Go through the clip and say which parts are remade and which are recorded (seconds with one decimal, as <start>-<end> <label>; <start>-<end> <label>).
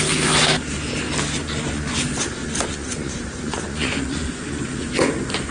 0.0-1.4 recorded; 1.4-2.0 remade; 2.0-2.4 recorded; 2.4-5.1 remade; 5.1-5.5 recorded